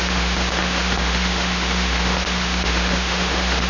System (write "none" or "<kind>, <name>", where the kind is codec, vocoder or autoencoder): autoencoder, DAC-VAE